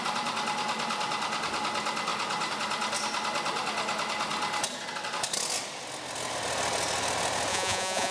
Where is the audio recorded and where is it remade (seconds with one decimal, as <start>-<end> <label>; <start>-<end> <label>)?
0.0-7.5 recorded; 7.5-8.1 remade

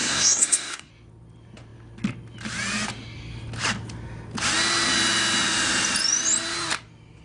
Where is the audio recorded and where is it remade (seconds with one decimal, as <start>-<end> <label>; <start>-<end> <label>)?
0.0-0.9 remade; 0.9-7.2 recorded